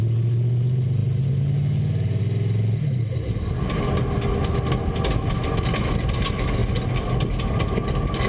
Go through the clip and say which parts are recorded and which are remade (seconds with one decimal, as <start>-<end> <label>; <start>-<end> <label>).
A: 0.0-8.3 recorded